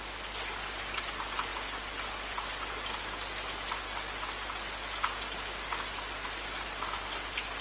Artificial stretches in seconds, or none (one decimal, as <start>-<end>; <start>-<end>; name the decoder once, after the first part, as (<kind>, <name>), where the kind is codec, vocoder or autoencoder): none